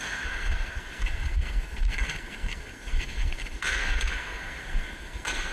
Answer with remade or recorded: remade